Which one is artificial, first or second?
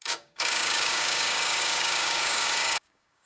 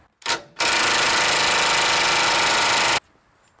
first